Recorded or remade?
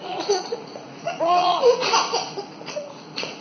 remade